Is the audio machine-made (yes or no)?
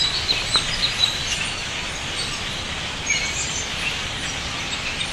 yes